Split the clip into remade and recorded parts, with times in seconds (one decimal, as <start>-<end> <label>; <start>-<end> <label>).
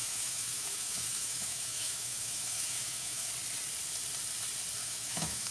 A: 0.0-3.3 remade; 3.3-4.8 recorded; 4.8-5.5 remade